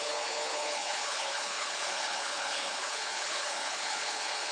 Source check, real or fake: fake